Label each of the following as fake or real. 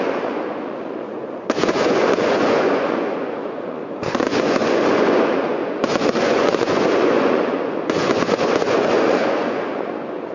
fake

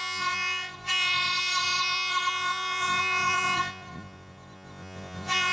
fake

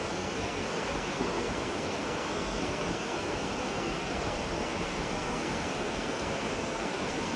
fake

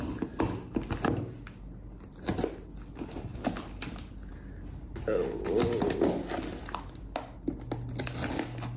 real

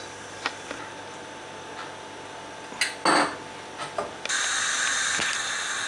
real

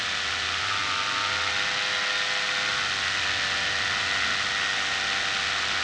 real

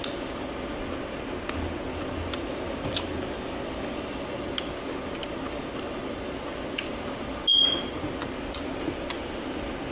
real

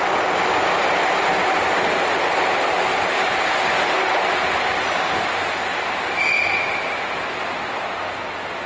real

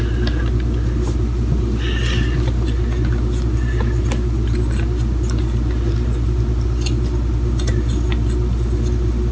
real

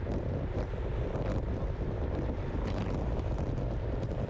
fake